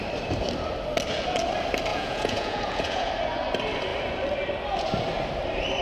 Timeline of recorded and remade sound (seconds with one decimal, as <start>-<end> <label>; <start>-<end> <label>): 0.0-1.9 recorded; 1.9-3.1 remade; 3.1-5.8 recorded